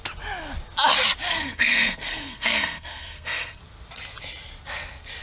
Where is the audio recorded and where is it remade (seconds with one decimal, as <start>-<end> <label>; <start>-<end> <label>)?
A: 0.0-1.3 recorded; 1.3-3.6 remade; 3.6-5.2 recorded